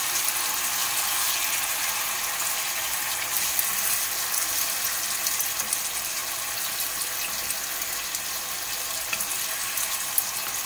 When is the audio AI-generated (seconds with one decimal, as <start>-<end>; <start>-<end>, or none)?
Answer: none